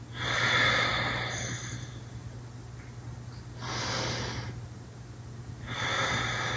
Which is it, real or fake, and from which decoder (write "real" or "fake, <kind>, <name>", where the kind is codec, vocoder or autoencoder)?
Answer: real